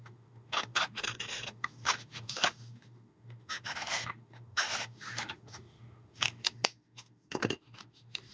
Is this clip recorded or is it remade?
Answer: remade